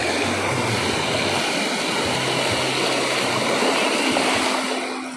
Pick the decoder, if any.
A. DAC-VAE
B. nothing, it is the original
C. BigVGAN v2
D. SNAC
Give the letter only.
B